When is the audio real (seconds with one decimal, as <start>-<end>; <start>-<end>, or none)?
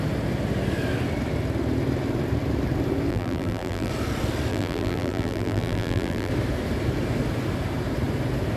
0.0-3.1; 3.9-4.5; 6.3-8.6